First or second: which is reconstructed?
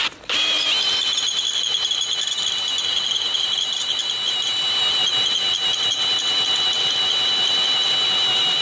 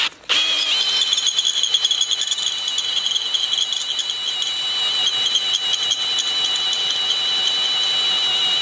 first